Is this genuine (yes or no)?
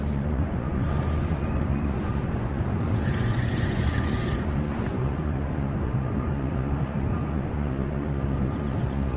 no